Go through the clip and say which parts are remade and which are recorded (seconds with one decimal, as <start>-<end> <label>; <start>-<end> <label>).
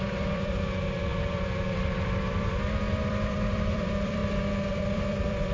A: 0.0-4.2 remade; 4.2-4.7 recorded; 4.7-5.5 remade